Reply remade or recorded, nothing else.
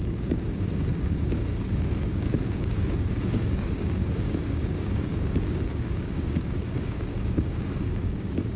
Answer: remade